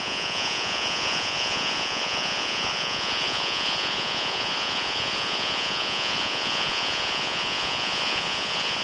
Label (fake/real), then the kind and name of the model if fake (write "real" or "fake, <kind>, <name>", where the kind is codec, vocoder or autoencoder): fake, vocoder, Vocos